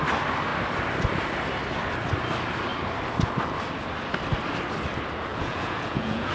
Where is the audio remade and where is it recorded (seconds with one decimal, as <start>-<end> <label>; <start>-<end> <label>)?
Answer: 0.0-5.3 recorded; 5.3-6.3 remade